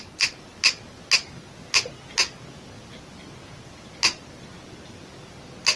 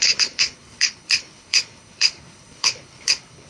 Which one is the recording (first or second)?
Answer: first